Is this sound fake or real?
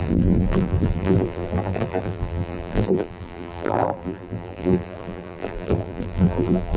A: fake